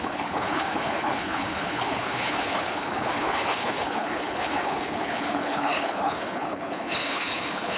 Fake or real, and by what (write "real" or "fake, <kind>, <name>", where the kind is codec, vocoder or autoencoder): fake, codec, HILCodec